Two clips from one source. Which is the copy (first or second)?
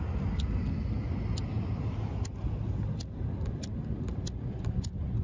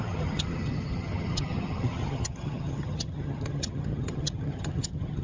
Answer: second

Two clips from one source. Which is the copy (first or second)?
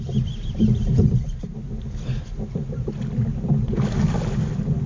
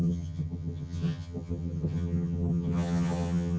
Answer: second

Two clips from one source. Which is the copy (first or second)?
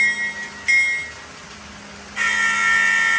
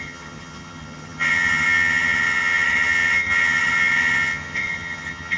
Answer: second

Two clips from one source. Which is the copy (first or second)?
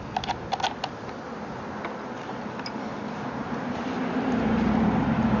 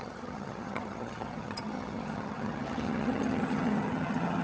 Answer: second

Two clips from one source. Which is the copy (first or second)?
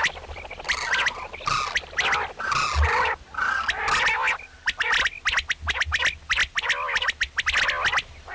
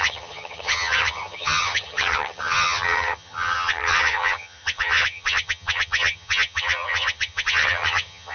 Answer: second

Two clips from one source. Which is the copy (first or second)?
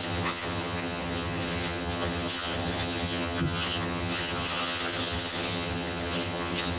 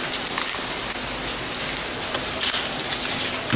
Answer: first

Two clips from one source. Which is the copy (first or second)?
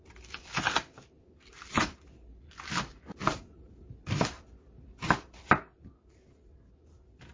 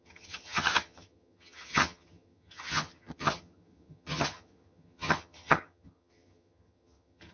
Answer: second